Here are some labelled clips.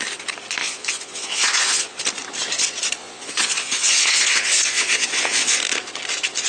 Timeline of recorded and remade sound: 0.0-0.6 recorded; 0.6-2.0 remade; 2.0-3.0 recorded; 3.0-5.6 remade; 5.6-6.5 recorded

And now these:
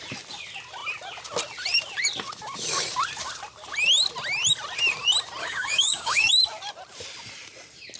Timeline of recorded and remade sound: 0.0-5.4 recorded; 5.4-6.3 remade; 6.3-8.0 recorded

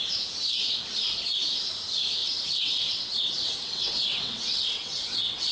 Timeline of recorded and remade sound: 0.0-2.2 recorded; 2.2-5.5 remade